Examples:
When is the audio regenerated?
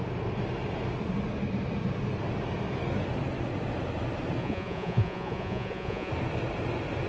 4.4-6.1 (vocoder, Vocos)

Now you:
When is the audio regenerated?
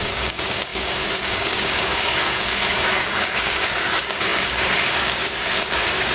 0.0-6.1 (codec, DAC)